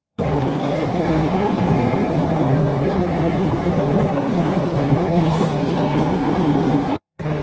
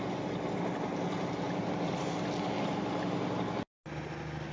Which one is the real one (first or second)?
second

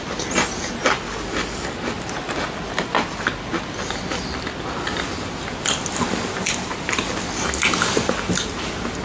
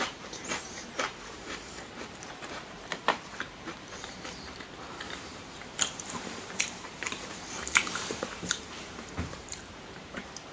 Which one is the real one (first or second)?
first